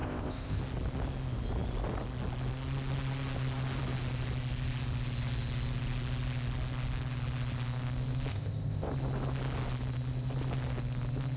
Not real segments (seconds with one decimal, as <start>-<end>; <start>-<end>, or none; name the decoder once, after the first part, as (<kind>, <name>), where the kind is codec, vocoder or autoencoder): 0.0-0.6 (codec, ZipCodec); 8.3-8.9